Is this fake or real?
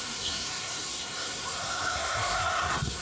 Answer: fake